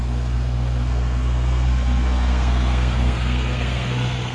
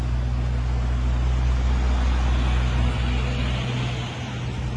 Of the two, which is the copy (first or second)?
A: first